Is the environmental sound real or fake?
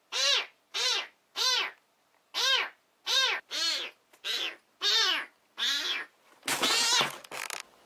real